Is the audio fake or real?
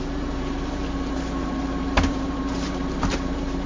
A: fake